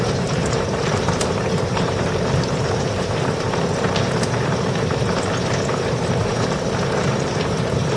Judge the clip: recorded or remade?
remade